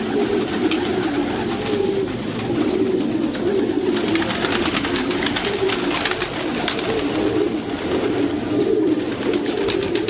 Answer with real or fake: real